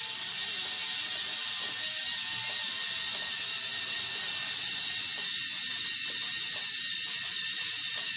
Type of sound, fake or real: real